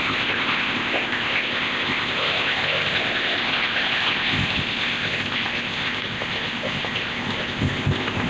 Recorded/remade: remade